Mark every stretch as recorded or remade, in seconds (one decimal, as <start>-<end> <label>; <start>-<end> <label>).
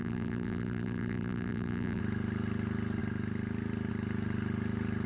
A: 0.0-2.0 remade; 2.0-5.1 recorded